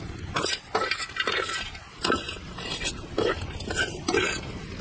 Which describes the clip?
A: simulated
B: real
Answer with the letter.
B